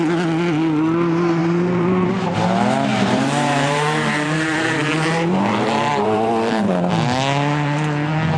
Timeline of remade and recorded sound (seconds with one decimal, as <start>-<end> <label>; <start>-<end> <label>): 0.0-1.4 recorded; 1.4-2.1 remade; 2.1-2.9 recorded; 2.9-6.3 remade; 6.3-8.4 recorded